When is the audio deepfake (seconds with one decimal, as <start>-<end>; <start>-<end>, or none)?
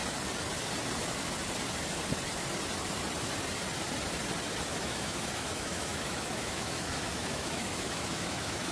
4.7-8.7